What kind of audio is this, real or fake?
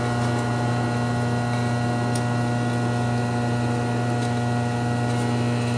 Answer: real